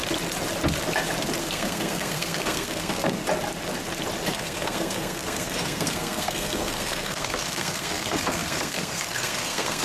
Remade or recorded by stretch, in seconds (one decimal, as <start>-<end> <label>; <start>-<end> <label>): 0.0-1.4 recorded; 1.4-3.2 remade; 3.2-4.3 recorded; 4.3-9.8 remade